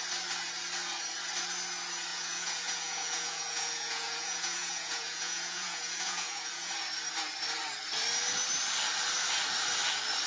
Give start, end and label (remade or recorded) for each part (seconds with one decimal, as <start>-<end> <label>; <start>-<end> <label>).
0.0-2.1 recorded; 2.1-6.7 remade; 6.7-10.3 recorded